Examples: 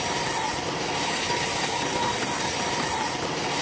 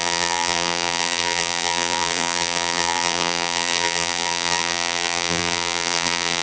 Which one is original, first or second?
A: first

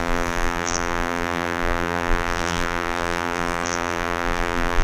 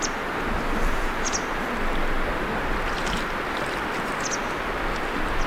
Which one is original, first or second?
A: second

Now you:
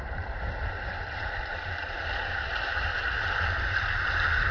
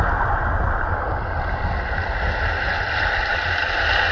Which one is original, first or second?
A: second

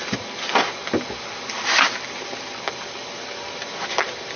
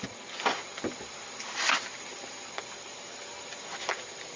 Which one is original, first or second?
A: first